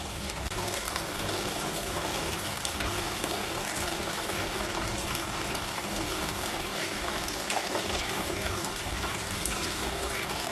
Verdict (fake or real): fake